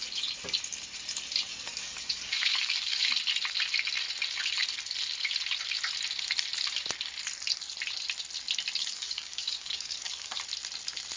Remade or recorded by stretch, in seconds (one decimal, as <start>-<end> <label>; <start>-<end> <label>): 0.0-1.5 recorded; 1.5-3.1 remade; 3.1-8.8 recorded; 8.8-10.4 remade; 10.4-11.2 recorded